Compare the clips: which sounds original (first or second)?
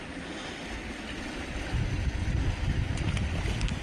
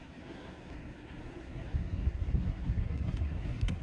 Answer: first